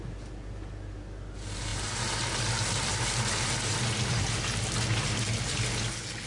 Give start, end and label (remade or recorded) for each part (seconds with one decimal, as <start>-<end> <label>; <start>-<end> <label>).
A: 0.0-6.3 recorded